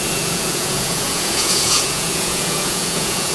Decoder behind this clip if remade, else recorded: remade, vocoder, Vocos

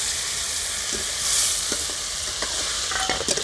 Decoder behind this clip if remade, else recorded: recorded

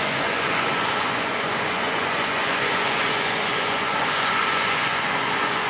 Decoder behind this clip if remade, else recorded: remade, vocoder, Vocos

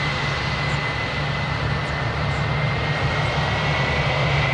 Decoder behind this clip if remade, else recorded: recorded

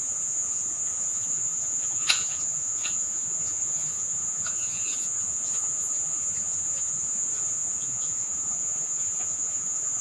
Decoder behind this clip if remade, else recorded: remade, vocoder, Vocos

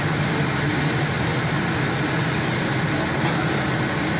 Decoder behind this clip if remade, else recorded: recorded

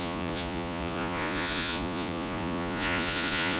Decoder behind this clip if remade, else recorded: remade, vocoder, Vocos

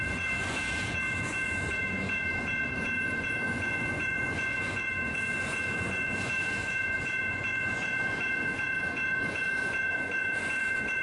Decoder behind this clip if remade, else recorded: remade, vocoder, Vocos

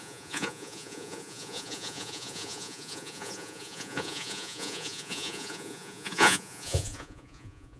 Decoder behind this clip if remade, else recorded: remade, vocoder, Vocos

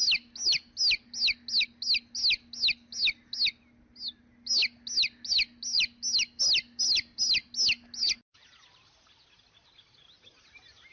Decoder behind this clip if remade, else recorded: recorded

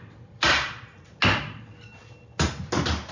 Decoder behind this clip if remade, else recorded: recorded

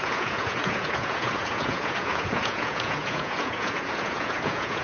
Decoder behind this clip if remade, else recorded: remade, vocoder, Vocos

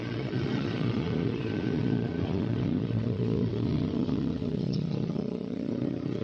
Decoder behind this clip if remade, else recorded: remade, vocoder, Vocos